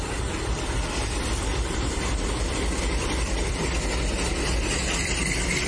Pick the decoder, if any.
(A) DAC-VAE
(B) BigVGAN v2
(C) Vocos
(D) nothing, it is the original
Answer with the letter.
B